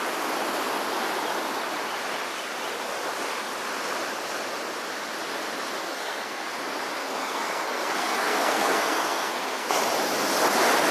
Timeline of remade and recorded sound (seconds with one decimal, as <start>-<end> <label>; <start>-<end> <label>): 0.0-5.8 recorded; 5.8-6.5 remade; 6.5-7.0 recorded; 7.0-9.7 remade; 9.7-10.9 recorded